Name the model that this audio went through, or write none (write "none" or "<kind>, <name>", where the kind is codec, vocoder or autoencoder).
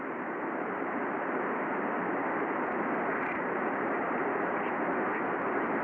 none